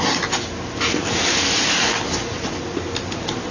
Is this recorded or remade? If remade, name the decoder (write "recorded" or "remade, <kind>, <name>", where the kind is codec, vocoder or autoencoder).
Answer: recorded